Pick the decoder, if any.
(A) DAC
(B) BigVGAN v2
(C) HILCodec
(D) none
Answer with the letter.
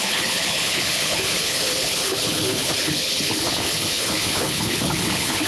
C